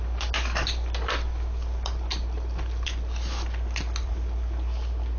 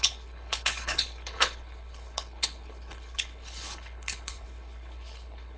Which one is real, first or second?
first